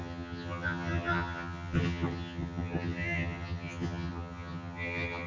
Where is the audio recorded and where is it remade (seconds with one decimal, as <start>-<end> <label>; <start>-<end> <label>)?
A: 0.0-5.3 remade